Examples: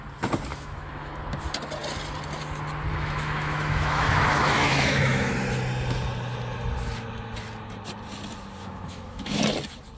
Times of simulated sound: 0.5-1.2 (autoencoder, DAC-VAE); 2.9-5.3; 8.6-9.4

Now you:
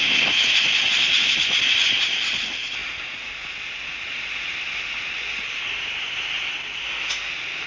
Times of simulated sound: 6.8-7.3 (autoencoder, DAC-VAE)